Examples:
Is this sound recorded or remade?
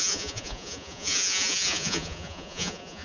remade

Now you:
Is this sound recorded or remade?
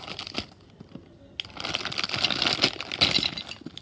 recorded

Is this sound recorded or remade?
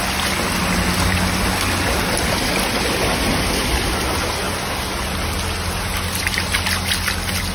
recorded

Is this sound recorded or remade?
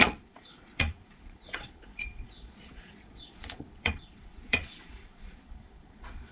remade